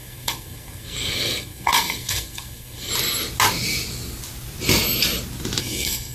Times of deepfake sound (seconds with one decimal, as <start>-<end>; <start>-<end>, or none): 0.0-2.9; 5.6-6.1

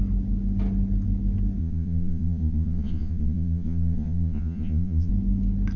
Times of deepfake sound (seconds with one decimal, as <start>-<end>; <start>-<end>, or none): 1.6-5.1